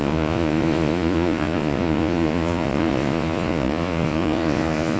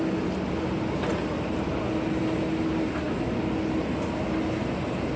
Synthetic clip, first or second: first